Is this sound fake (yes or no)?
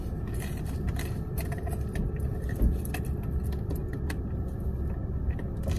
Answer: no